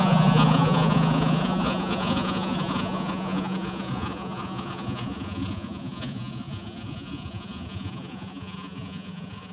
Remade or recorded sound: remade